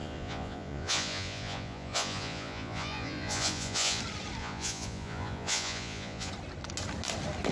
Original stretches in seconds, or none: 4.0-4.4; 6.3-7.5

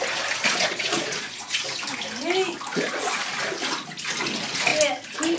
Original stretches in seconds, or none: 0.0-0.4; 1.7-2.7; 3.3-5.4

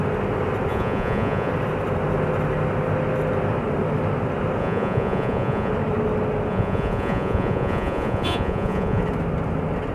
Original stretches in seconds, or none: 0.0-0.7; 1.5-4.6; 5.7-6.5; 9.0-9.9

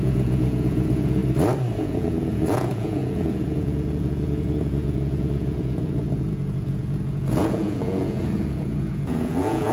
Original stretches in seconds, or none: 1.2-1.8

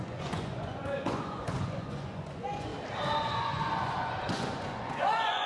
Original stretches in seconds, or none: 2.7-3.2

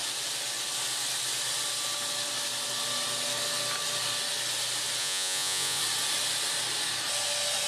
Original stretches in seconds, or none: 0.0-5.0; 5.8-7.7